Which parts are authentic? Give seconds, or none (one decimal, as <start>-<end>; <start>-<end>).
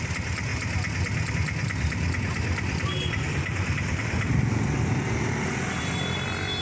0.0-6.6